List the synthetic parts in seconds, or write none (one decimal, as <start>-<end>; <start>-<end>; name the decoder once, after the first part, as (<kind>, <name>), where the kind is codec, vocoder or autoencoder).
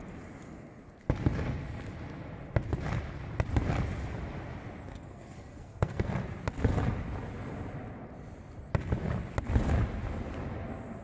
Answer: 4.9-6.1 (codec, SNAC)